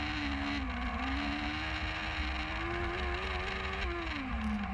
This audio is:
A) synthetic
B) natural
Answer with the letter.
B